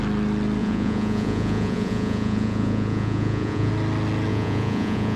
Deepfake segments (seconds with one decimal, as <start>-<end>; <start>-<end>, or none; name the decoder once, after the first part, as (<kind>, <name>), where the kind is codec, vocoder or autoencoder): 0.6-3.7 (vocoder, Vocos); 4.3-5.2